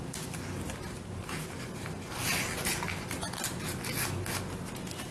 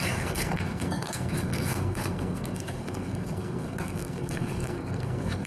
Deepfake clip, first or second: second